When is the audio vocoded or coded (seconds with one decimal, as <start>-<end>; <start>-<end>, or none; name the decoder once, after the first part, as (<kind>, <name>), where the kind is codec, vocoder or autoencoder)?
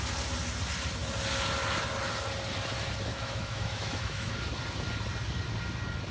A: 3.1-4.3 (autoencoder, DAC-VAE)